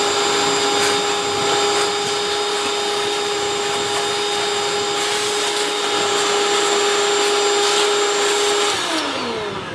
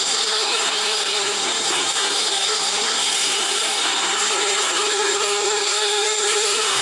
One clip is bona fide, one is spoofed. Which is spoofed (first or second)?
second